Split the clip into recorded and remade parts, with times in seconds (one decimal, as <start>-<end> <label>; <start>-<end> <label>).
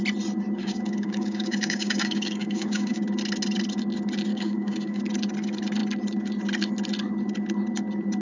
0.0-0.6 recorded; 0.6-3.0 remade; 3.0-4.3 recorded; 4.3-5.0 remade; 5.0-8.2 recorded